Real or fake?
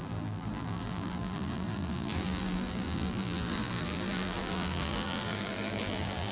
fake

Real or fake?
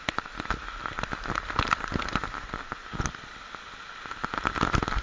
real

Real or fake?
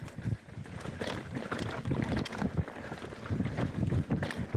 real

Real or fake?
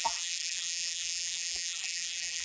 fake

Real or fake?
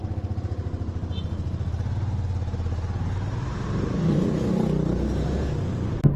real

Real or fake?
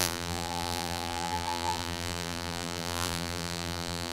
fake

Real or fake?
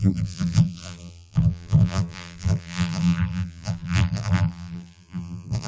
fake